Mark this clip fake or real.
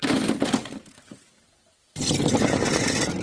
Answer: real